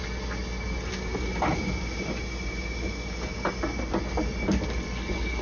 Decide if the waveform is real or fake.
real